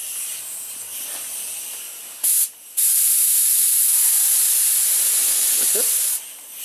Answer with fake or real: real